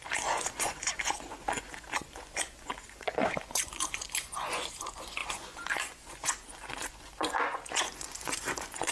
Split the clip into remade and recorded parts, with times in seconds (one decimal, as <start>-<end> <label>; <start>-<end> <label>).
0.0-8.9 remade